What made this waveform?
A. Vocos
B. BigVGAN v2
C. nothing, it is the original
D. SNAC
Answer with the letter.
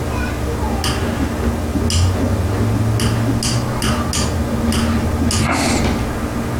C